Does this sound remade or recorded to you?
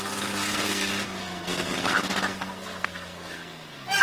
remade